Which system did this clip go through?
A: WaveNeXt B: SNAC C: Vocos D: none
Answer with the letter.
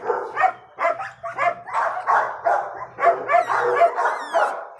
D